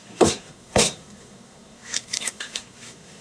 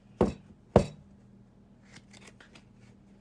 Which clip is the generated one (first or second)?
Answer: first